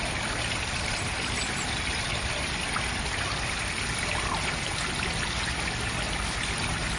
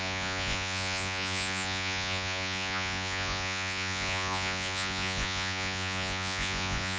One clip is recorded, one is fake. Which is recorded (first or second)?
first